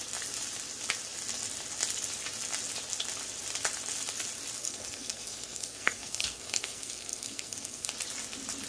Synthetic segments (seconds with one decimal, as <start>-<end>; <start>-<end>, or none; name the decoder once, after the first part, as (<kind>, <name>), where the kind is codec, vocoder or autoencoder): 4.6-7.9 (codec, SNAC)